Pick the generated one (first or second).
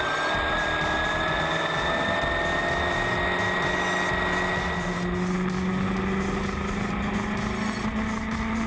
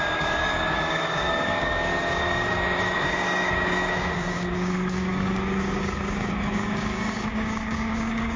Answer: second